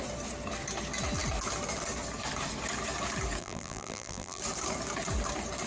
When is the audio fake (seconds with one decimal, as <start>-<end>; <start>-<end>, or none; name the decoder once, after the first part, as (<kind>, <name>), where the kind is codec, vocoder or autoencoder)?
3.4-4.4 (vocoder, BigVGAN v2)